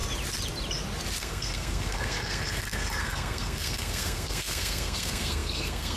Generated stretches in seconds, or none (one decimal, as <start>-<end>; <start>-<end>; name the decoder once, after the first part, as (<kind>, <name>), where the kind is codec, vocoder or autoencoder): 1.2-6.0 (codec, SNAC)